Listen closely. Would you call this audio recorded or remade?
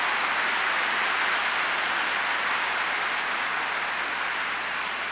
remade